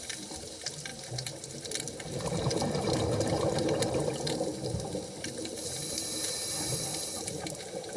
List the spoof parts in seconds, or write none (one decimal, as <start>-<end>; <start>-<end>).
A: none